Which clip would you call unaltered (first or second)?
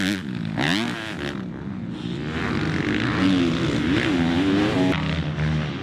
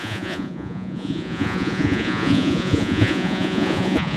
first